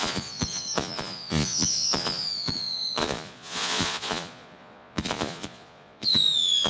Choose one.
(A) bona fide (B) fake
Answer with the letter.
B